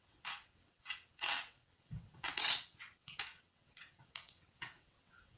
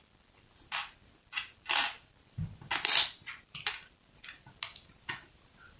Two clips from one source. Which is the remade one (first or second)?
first